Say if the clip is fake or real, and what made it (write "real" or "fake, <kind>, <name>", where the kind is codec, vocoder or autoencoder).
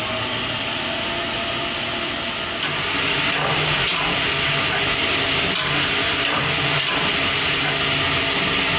real